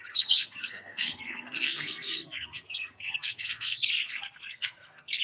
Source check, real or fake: fake